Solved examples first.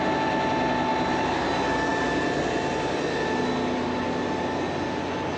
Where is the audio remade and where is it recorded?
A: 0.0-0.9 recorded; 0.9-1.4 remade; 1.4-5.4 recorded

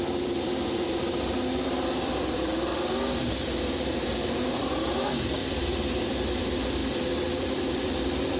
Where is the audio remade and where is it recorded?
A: 0.0-2.7 remade; 2.7-4.5 recorded; 4.5-6.8 remade; 6.8-7.4 recorded; 7.4-8.4 remade

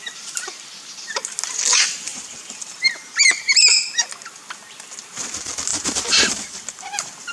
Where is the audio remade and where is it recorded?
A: 0.0-2.1 recorded; 2.1-3.4 remade; 3.4-5.7 recorded; 5.7-6.6 remade; 6.6-7.3 recorded

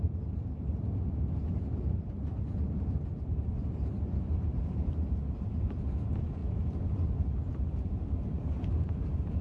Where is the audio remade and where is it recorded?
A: 0.0-6.4 remade; 6.4-7.5 recorded; 7.5-9.4 remade

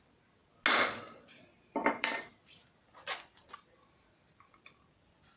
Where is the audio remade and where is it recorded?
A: 0.0-1.8 recorded; 1.8-3.5 remade; 3.5-5.4 recorded

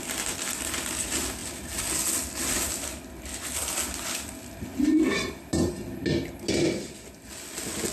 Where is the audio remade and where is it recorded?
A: 0.0-7.9 recorded

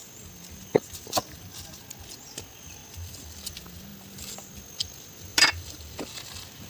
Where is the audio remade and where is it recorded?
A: 0.0-2.8 recorded; 2.8-3.5 remade; 3.5-3.9 recorded; 3.9-4.5 remade; 4.5-5.3 recorded; 5.3-6.7 remade